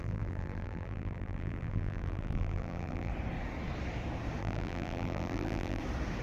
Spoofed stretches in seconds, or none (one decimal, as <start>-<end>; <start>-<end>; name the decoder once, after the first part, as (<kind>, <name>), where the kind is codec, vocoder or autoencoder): 0.0-3.1 (vocoder, BigVGAN v2); 4.4-5.8